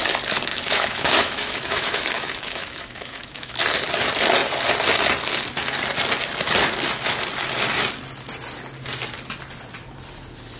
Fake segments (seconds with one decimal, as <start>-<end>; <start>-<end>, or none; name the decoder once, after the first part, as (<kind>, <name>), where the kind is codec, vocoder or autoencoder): 0.5-3.6 (autoencoder, DAC-VAE)